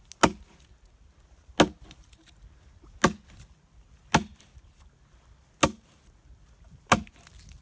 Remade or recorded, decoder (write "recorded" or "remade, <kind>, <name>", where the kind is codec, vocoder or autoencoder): recorded